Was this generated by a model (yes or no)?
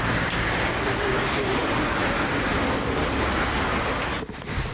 no